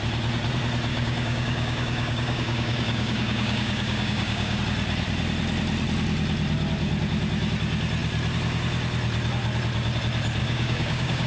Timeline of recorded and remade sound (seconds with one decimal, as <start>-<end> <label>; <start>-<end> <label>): 0.0-0.9 recorded; 0.9-4.6 remade; 4.6-10.4 recorded; 10.4-11.3 remade